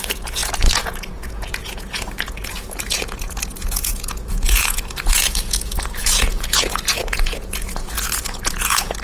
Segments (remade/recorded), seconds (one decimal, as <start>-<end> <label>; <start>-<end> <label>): 0.0-9.0 remade